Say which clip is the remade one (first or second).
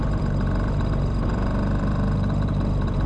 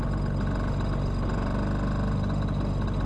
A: first